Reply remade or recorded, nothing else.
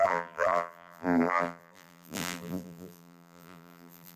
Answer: remade